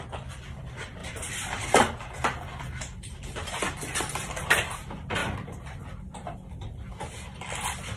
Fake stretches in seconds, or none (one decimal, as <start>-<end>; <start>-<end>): 1.0-1.8